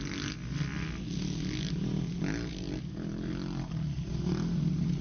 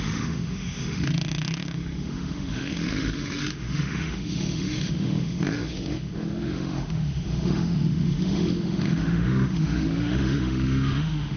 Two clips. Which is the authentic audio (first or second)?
first